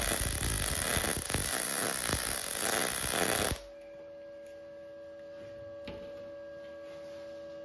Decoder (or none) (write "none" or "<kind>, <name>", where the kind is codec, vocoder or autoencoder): none